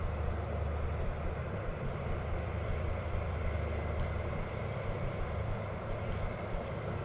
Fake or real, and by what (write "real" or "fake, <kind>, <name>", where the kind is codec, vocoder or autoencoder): fake, vocoder, BigVGAN v2